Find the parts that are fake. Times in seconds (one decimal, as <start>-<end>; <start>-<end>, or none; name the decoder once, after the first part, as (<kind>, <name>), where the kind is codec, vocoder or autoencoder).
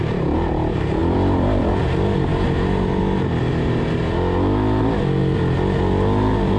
1.0-1.6 (vocoder, BigVGAN v2)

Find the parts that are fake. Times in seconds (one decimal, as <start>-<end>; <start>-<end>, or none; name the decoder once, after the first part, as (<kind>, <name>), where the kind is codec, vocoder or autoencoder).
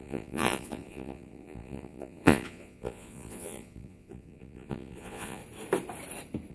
0.0-5.4 (vocoder, Vocos)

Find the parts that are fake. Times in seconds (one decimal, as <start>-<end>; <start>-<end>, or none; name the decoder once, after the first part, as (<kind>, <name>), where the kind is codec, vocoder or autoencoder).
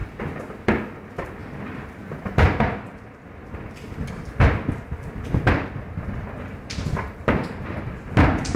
0.0-0.8 (vocoder, BigVGAN v2); 1.4-5.7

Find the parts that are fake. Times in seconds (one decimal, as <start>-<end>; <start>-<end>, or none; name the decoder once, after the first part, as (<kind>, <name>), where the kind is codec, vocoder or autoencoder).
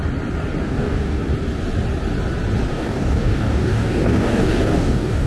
0.6-1.2 (codec, DAC); 2.7-5.3